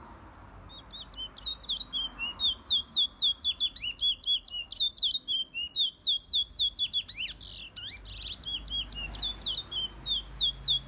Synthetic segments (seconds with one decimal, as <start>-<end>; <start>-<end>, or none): none